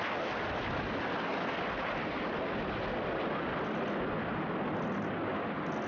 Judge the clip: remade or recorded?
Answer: recorded